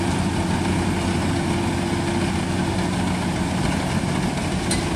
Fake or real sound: real